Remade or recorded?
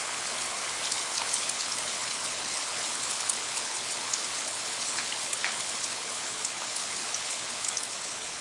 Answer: remade